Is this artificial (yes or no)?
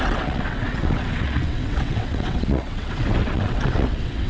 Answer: yes